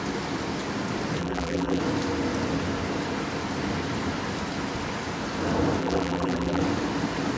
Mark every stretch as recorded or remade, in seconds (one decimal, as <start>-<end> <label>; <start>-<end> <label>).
0.0-1.2 recorded; 1.2-1.8 remade; 1.8-5.8 recorded; 5.8-6.6 remade; 6.6-7.4 recorded